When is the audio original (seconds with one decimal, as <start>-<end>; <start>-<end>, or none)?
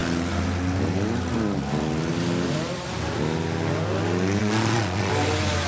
0.0-4.4; 5.1-5.7